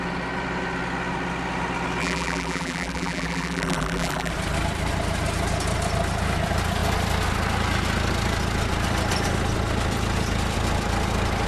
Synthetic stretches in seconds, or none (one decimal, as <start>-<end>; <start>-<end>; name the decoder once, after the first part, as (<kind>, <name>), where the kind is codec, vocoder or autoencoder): 2.0-4.3 (vocoder, BigVGAN v2)